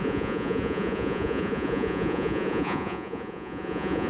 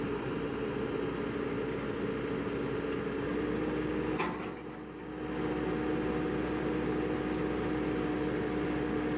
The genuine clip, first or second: second